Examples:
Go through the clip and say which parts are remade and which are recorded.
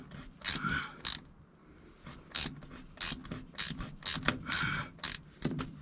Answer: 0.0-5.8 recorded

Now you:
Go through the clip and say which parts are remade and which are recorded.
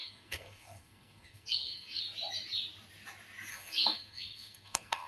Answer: 0.0-2.0 remade; 2.0-3.5 recorded; 3.5-5.1 remade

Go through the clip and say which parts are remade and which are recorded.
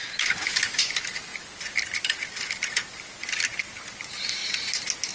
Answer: 0.0-5.1 recorded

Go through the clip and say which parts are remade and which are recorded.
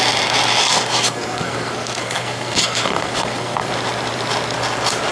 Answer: 0.0-0.6 recorded; 0.6-3.7 remade; 3.7-5.1 recorded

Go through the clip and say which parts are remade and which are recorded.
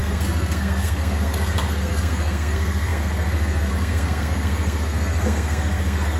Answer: 0.0-6.2 remade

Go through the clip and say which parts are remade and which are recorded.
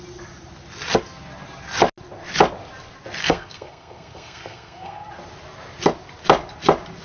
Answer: 0.0-3.2 recorded; 3.2-5.1 remade; 5.1-7.0 recorded